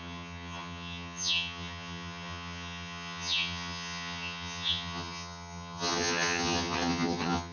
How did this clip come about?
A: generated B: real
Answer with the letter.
A